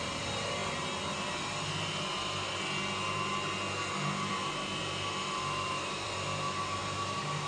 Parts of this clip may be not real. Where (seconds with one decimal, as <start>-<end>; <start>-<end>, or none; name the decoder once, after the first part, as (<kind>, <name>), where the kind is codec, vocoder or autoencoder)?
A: 0.0-0.6 (vocoder, BigVGAN v2); 4.3-4.8; 5.7-6.8